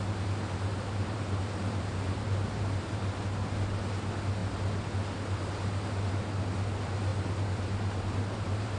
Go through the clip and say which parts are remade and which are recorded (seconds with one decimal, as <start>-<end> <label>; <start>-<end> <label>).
0.0-0.7 recorded; 0.7-3.0 remade; 3.0-7.1 recorded; 7.1-8.8 remade